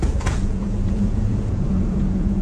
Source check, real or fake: fake